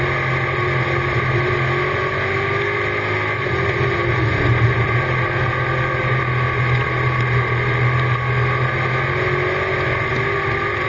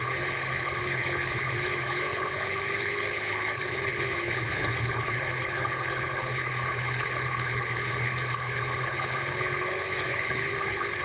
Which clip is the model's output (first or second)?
second